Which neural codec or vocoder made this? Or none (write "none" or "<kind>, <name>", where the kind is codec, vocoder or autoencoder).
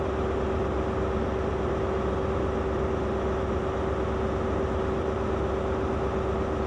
none